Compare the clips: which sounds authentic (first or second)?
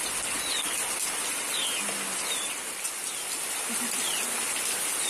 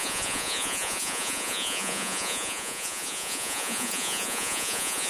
first